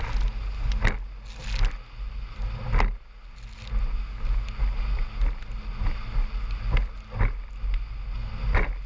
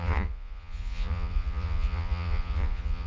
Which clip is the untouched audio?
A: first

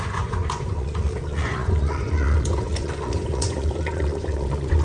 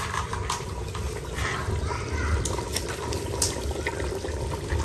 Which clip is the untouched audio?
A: second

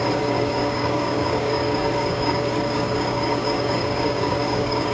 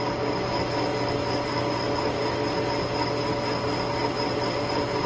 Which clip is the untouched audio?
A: second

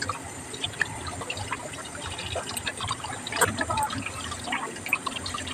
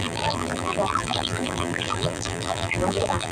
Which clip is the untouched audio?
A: first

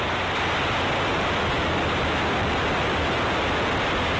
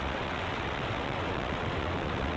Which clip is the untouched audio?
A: first